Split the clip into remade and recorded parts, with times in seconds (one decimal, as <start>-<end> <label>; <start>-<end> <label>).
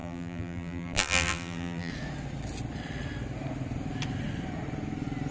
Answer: 0.0-1.9 remade; 1.9-5.3 recorded